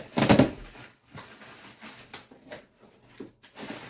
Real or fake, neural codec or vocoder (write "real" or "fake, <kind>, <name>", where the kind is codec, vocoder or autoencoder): real